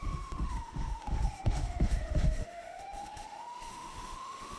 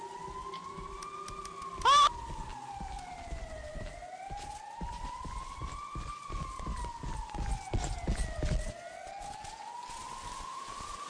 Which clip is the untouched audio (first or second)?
second